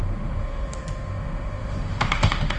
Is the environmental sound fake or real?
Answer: fake